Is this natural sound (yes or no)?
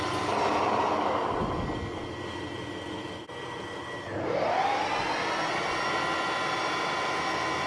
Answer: yes